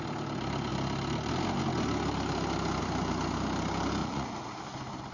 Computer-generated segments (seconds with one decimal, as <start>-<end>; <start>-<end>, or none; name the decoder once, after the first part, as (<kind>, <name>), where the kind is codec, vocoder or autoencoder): 4.0-4.6 (vocoder, Vocos)